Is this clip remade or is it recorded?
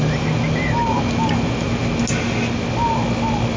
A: recorded